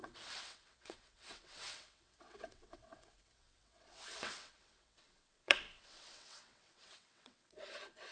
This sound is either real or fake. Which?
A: fake